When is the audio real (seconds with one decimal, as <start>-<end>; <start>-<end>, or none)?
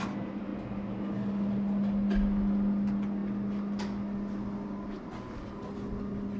0.0-6.4